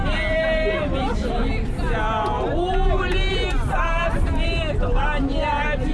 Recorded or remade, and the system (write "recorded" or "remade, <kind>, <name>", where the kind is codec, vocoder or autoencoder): recorded